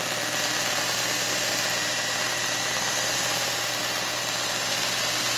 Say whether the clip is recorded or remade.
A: recorded